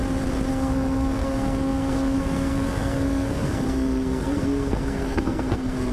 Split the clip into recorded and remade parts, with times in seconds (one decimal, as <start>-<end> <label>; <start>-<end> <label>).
0.0-0.5 recorded; 0.5-5.9 remade